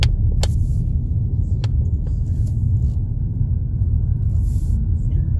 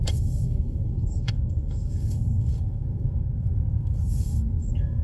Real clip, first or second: first